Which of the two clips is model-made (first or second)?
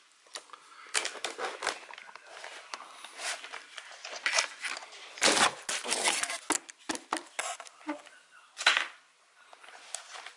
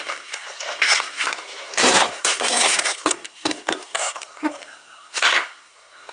second